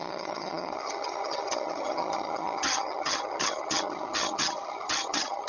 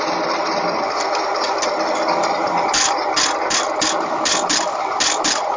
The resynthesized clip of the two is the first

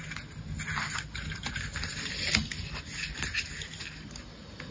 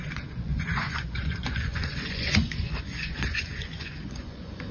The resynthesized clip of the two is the second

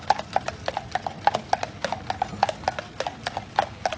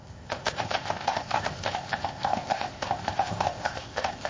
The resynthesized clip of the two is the second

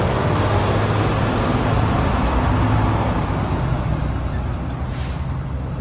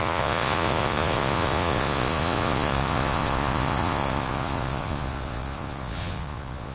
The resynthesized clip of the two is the second